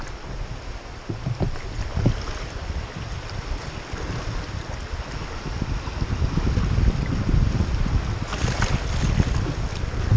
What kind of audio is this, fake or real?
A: real